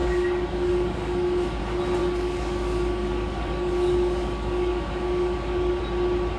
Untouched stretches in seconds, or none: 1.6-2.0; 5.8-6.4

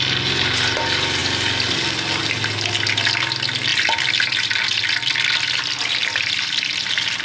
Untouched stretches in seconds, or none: 0.0-7.2